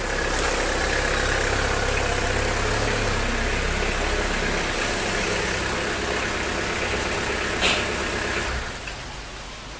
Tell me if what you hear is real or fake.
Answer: real